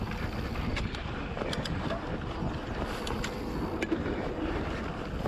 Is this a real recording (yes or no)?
yes